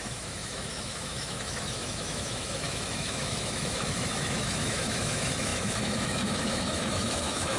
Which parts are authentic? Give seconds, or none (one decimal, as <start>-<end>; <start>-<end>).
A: none